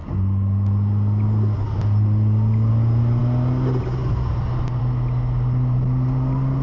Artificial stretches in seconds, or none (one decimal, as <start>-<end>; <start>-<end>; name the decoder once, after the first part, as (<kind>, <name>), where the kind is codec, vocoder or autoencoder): none